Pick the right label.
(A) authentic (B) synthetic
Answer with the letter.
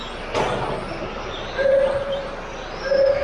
A